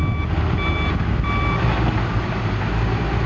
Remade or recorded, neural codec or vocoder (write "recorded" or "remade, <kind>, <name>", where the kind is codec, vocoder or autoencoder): recorded